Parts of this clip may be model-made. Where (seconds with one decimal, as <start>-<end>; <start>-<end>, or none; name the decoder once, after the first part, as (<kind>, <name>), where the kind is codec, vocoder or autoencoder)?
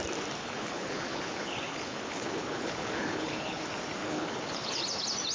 0.4-3.6 (codec, HILCodec); 4.0-4.8